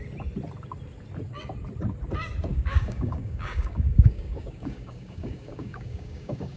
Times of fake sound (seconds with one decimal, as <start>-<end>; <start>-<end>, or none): 2.5-6.6